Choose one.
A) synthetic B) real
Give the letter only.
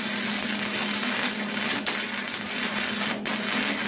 B